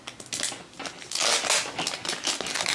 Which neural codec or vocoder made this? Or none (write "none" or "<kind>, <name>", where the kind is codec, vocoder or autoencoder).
none